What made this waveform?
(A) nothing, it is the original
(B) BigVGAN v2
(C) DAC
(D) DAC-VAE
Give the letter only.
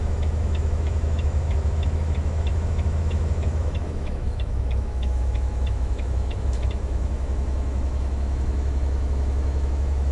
D